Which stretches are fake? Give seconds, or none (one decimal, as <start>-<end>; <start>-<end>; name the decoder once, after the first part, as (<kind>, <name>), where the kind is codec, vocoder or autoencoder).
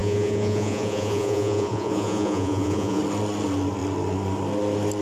0.0-3.0 (vocoder, Vocos)